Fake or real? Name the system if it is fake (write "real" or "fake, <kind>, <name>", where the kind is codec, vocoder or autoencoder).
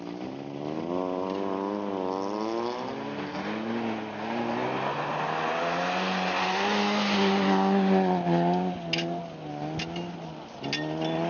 real